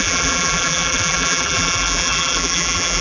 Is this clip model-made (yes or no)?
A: yes